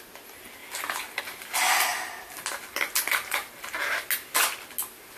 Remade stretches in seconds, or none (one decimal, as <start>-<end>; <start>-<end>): 0.6-1.2